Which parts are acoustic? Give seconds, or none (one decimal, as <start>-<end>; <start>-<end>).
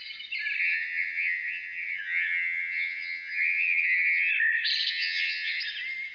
0.0-0.6; 4.3-4.9; 5.6-6.1